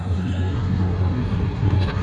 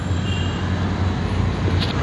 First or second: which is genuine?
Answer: second